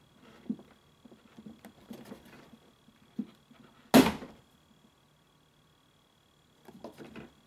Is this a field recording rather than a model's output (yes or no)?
yes